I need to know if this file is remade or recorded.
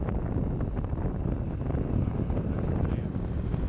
recorded